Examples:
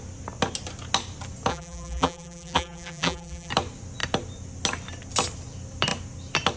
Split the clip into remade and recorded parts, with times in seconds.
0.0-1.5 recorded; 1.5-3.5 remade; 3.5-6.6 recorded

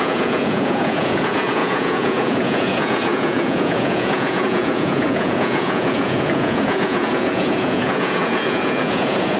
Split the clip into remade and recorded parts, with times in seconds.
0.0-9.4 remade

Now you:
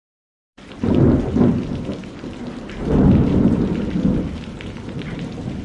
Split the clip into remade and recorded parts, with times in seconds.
0.0-2.0 recorded; 2.0-5.6 remade

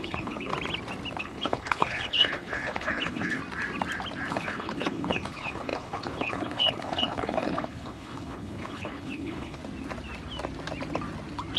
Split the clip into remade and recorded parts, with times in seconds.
0.0-0.5 remade; 0.5-1.2 recorded; 1.2-3.4 remade; 3.4-4.3 recorded; 4.3-9.6 remade; 9.6-11.6 recorded

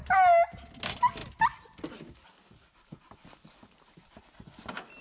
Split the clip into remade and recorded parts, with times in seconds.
0.0-5.0 recorded

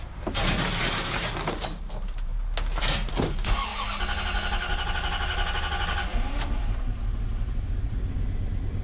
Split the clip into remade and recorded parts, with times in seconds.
0.0-2.3 remade; 2.3-2.8 recorded; 2.8-3.7 remade; 3.7-6.2 recorded; 6.2-8.8 remade

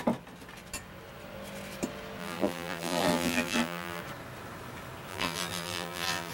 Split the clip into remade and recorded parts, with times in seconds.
0.0-2.2 recorded; 2.2-4.0 remade; 4.0-5.1 recorded; 5.1-6.3 remade

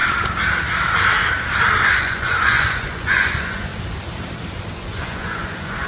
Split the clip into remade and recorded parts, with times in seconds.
0.0-1.9 recorded; 1.9-3.7 remade; 3.7-4.7 recorded; 4.7-5.9 remade